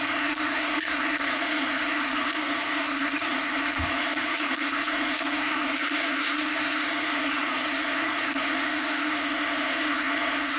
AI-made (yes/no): yes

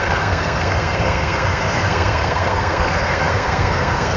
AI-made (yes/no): yes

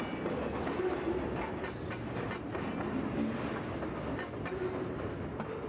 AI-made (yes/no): no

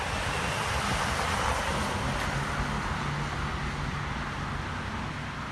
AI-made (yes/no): no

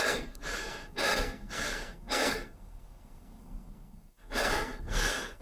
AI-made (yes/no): yes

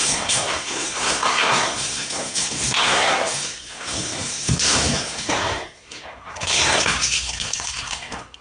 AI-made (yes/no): yes